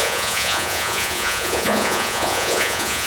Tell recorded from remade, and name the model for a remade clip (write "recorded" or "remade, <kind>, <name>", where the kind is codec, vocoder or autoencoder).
remade, vocoder, Vocos